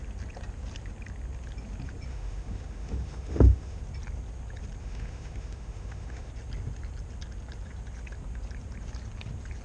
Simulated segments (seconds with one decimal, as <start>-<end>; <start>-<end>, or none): 2.1-3.8; 4.8-6.3